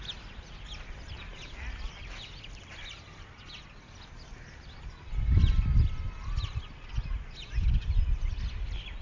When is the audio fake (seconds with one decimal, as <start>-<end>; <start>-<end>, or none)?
none